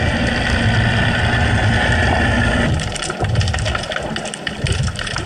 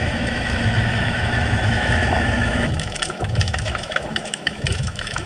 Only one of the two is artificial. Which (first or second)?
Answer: second